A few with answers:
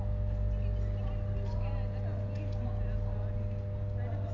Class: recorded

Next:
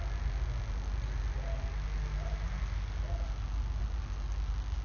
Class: recorded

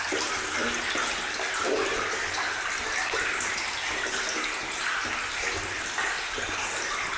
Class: recorded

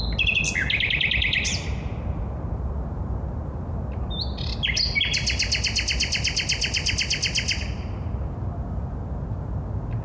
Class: recorded